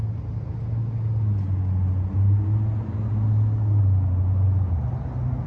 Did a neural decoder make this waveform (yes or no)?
no